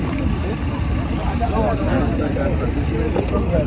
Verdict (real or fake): real